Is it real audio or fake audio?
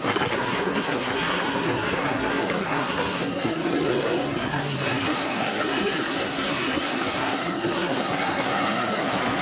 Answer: fake